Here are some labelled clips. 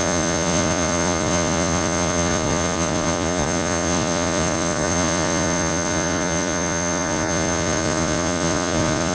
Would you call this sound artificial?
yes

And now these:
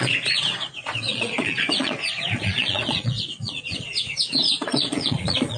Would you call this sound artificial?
yes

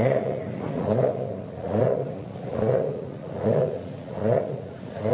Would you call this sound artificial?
yes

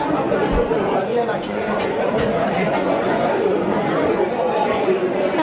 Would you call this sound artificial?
yes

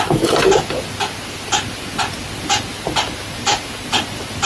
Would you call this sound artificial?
no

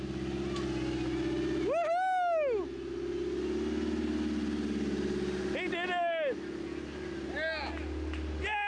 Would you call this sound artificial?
no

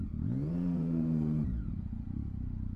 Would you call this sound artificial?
yes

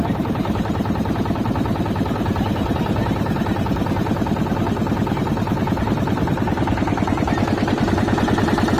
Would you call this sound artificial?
no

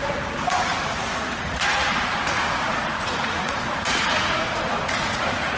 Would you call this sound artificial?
yes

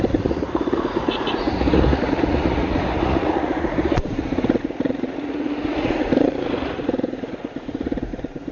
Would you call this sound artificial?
yes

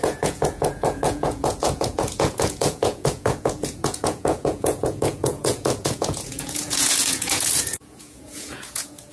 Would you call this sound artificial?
yes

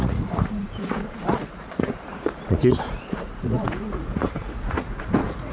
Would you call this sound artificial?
yes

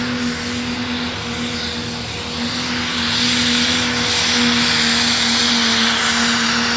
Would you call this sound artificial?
no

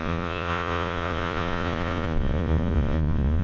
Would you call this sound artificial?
yes